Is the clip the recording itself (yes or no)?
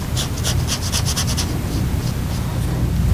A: yes